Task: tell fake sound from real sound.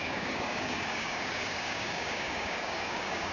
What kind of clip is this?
fake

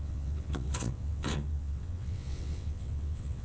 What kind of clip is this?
fake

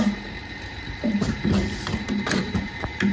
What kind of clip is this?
fake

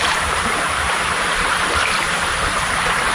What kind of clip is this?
fake